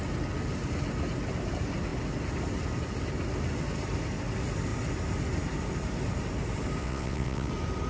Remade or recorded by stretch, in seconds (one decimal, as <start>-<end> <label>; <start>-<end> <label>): 0.0-6.8 recorded; 6.8-7.5 remade; 7.5-7.9 recorded